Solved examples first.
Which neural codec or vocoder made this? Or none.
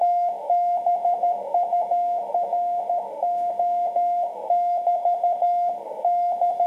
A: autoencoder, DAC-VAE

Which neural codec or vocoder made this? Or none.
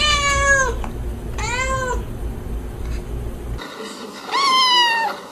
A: none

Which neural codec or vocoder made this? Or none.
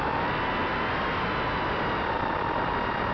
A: none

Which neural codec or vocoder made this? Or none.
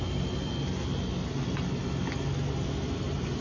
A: none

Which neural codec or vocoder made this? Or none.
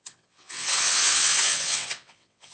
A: vocoder, WaveNeXt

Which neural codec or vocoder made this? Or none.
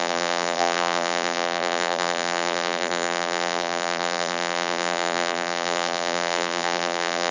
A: vocoder, BigVGAN v2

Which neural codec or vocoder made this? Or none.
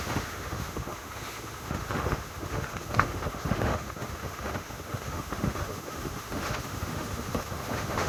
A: autoencoder, DAC-VAE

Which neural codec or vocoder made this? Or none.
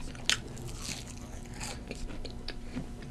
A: none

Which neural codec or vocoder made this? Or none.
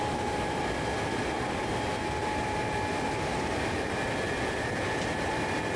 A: none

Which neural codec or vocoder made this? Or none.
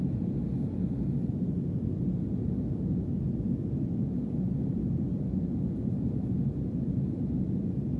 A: none